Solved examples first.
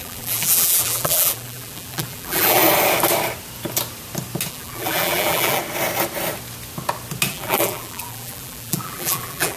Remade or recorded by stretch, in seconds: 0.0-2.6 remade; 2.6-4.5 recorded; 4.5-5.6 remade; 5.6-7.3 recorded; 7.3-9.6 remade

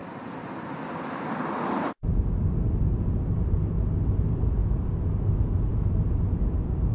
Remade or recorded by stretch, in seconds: 0.0-5.7 recorded; 5.7-6.9 remade

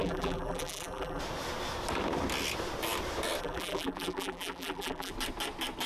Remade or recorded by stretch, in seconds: 0.0-1.2 remade; 1.2-3.4 recorded; 3.4-5.1 remade; 5.1-5.9 recorded

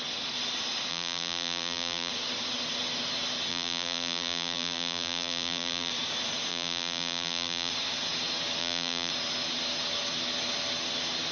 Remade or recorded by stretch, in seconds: 0.0-0.9 recorded; 0.9-2.1 remade; 2.1-3.5 recorded; 3.5-5.9 remade; 5.9-6.5 recorded; 6.5-7.7 remade; 7.7-8.6 recorded; 8.6-9.1 remade; 9.1-11.3 recorded